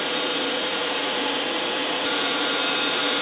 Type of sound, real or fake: fake